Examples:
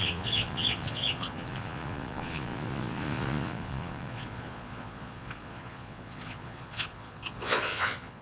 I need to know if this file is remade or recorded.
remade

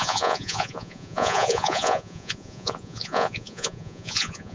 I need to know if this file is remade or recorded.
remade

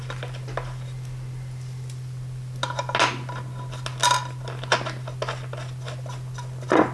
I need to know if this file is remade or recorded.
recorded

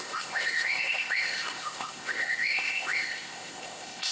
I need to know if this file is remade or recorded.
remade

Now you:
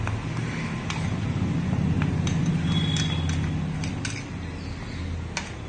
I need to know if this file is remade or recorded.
recorded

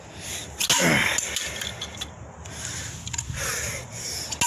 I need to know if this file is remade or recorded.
recorded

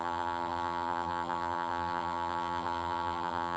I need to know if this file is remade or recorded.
remade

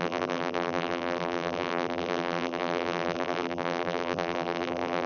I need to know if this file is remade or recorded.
remade